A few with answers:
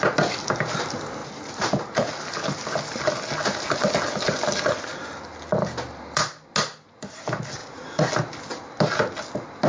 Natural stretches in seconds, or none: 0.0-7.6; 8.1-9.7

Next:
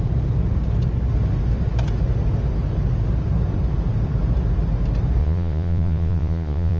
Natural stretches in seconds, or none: 0.0-5.2

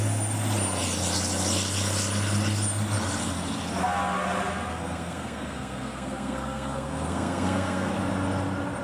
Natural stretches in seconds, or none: 0.0-4.7; 7.9-8.8

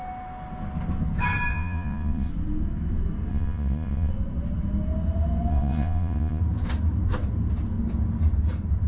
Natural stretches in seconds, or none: 0.0-1.5; 2.3-3.3; 4.1-5.5; 6.4-8.9

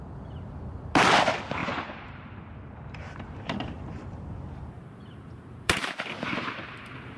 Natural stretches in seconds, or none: 0.0-1.6; 5.9-7.2

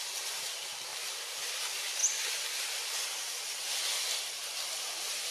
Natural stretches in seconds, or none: 0.0-5.3